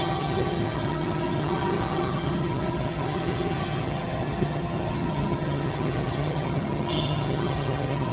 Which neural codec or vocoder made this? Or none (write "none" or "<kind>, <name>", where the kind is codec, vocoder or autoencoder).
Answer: vocoder, HiFi-GAN